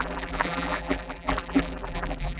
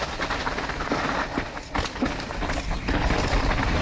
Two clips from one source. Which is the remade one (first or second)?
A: first